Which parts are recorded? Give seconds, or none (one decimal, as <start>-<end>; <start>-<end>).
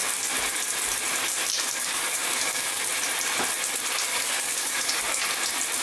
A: 0.0-1.5; 2.8-4.1; 5.0-5.8